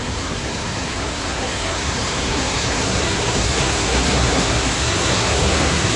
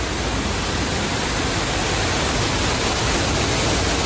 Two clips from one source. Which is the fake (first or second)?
first